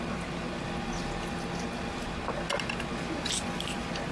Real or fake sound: real